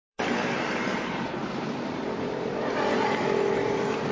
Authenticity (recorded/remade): remade